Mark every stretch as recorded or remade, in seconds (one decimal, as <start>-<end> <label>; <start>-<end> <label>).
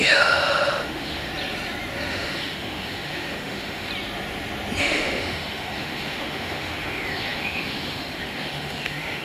0.0-1.3 remade; 1.3-2.1 recorded; 2.1-3.9 remade; 3.9-4.8 recorded; 4.8-9.2 remade